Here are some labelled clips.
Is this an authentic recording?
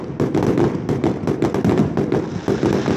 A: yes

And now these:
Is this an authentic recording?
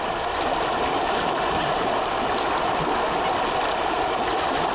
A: yes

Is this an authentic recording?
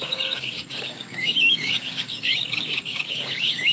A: no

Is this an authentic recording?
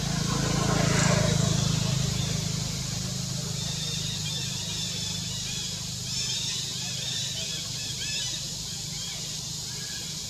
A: yes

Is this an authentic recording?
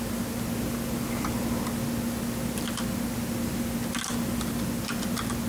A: yes